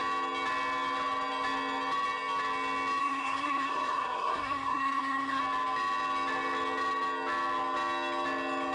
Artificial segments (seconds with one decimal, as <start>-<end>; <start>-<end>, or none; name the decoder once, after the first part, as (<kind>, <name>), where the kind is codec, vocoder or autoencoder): 3.0-5.4 (codec, SNAC)